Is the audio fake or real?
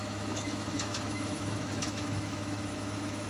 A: fake